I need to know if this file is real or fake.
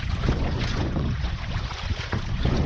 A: fake